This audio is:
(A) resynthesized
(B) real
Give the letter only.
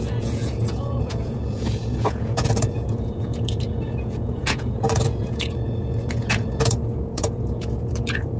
A